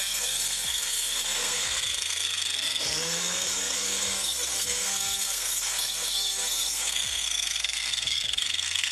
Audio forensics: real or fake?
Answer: fake